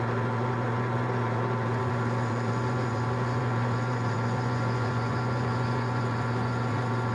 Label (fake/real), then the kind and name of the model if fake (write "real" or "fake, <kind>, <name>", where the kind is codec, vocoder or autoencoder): fake, vocoder, Vocos